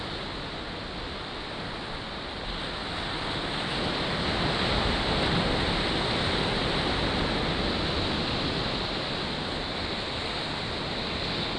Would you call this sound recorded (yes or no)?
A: yes